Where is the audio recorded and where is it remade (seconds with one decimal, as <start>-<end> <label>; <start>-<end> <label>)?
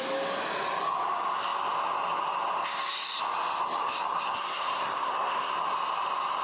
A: 0.0-4.5 recorded; 4.5-5.5 remade; 5.5-6.4 recorded